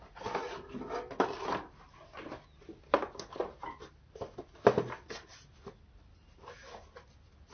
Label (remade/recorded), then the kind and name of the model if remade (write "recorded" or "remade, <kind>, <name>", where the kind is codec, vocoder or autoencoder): recorded